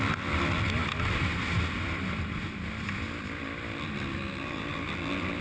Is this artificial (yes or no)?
no